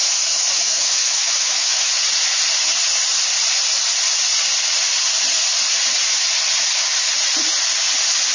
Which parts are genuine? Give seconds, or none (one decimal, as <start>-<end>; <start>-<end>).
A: 1.9-8.3

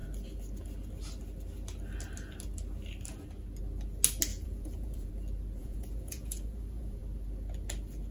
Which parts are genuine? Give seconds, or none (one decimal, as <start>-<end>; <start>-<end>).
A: 0.0-4.3; 5.1-5.6; 7.0-8.1

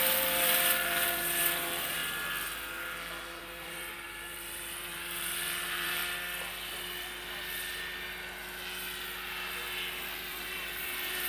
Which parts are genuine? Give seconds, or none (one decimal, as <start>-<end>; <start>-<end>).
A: 2.0-3.4; 6.0-10.3